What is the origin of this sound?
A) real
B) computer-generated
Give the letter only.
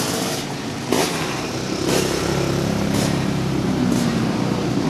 B